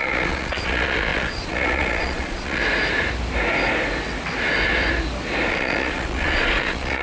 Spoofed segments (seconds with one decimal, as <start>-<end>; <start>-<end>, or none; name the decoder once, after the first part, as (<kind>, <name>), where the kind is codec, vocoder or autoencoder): 0.0-2.6 (vocoder, Vocos); 5.5-7.0